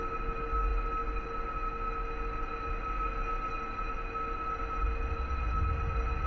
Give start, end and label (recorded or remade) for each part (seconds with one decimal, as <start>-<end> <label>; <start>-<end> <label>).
0.0-6.3 recorded